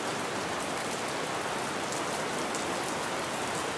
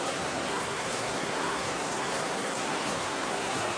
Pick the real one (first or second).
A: first